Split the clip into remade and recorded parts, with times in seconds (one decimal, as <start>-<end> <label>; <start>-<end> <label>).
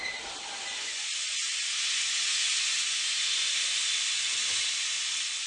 0.0-0.7 recorded; 0.7-3.5 remade; 3.5-5.5 recorded